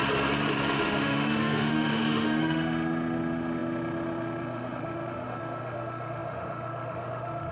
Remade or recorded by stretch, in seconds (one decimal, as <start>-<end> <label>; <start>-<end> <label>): 0.0-0.7 recorded; 0.7-7.5 remade

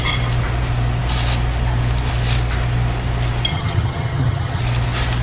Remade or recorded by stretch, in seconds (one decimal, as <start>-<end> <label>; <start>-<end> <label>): 0.0-3.5 recorded; 3.5-4.6 remade; 4.6-5.2 recorded